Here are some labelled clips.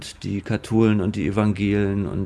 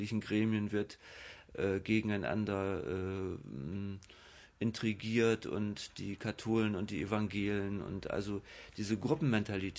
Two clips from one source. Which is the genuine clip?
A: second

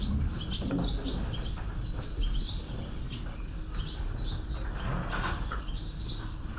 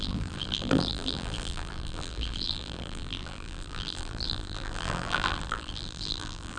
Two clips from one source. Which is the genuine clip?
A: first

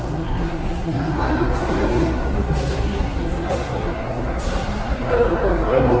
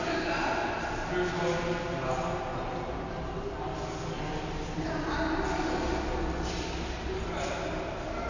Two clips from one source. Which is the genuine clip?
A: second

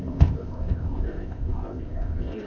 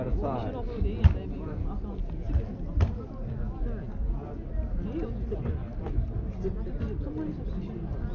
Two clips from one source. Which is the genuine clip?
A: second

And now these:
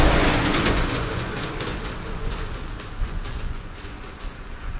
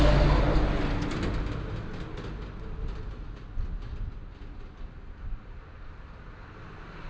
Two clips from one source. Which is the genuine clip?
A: second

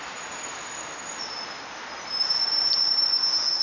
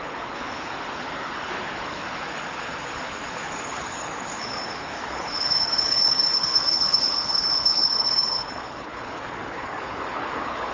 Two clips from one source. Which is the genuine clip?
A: first